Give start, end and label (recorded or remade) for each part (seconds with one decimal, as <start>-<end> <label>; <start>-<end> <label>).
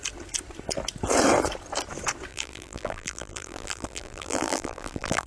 0.0-2.3 recorded; 2.3-5.3 remade